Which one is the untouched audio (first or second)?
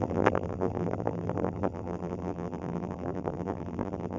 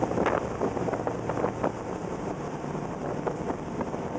second